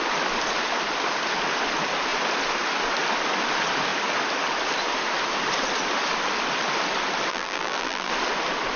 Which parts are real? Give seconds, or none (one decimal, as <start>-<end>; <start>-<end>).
0.0-7.3; 8.1-8.8